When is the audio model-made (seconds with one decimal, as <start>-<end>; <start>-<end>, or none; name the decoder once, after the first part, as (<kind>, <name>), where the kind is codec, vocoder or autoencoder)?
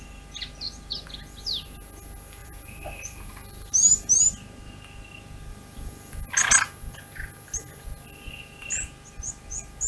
2.4-4.2 (vocoder, BigVGAN v2); 5.5-6.5